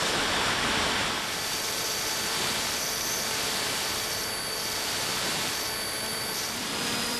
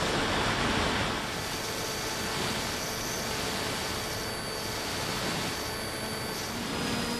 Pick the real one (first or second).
second